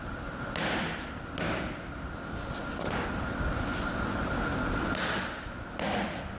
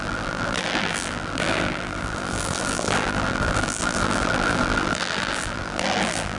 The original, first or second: first